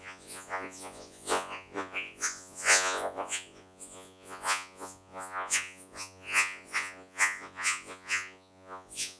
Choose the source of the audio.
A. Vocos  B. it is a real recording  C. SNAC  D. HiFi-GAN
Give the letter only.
A